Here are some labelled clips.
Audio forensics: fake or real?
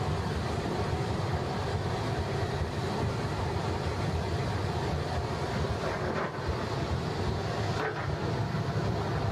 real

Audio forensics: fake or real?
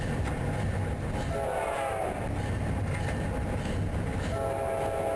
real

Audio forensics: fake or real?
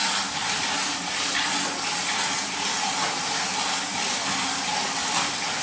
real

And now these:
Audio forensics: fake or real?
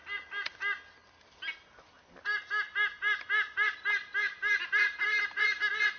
real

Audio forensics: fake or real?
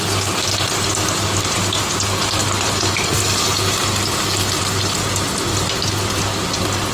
real